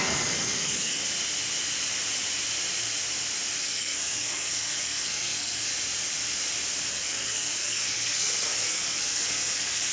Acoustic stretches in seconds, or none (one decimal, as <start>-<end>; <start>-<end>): 1.0-3.6; 5.7-6.9